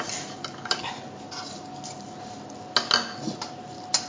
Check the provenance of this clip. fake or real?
real